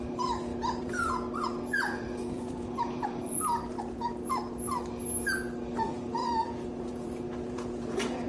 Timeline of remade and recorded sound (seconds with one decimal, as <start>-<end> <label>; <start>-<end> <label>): 0.0-0.5 recorded; 0.5-4.1 remade; 4.1-6.2 recorded; 6.2-8.3 remade